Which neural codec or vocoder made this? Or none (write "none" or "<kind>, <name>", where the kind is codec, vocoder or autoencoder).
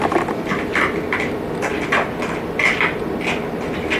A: none